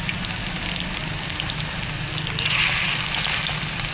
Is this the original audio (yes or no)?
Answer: yes